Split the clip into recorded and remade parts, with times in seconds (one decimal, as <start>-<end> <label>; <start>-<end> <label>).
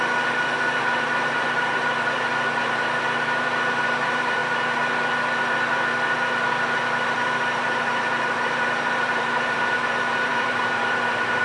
0.0-4.4 remade; 4.4-7.6 recorded; 7.6-11.4 remade